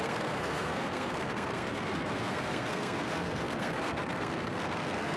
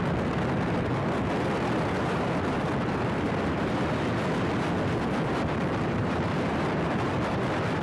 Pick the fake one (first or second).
first